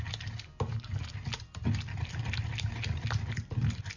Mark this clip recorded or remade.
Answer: recorded